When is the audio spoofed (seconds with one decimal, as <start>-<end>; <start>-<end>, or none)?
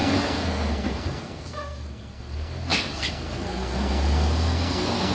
0.0-5.1